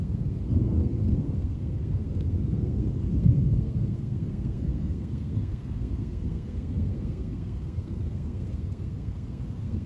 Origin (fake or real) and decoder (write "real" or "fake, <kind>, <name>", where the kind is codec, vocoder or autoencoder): fake, codec, SNAC